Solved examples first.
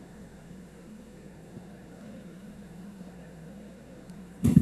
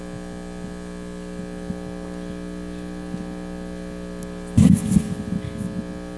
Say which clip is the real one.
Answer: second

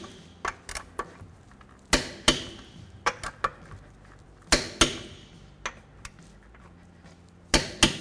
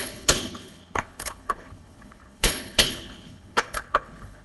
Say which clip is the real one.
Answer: first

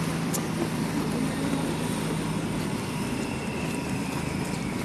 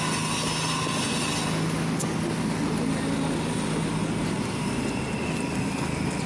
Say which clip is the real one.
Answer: second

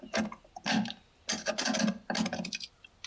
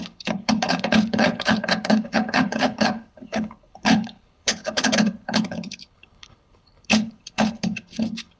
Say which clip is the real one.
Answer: first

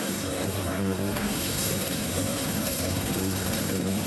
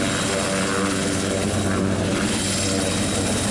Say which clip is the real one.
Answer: second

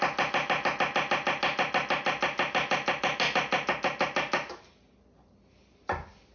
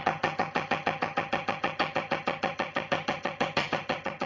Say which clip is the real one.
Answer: first